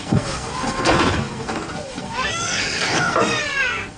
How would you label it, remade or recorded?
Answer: remade